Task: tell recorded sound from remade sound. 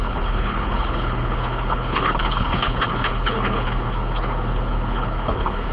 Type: remade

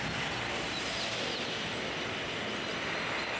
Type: recorded